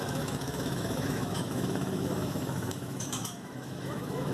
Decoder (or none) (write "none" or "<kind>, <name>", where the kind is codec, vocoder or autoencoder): autoencoder, DAC-VAE